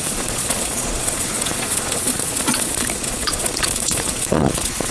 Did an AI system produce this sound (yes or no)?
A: yes